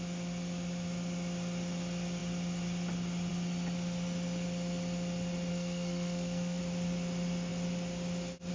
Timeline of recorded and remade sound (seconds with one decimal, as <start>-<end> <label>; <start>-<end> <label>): 0.0-5.5 recorded; 5.5-6.6 remade; 6.6-8.5 recorded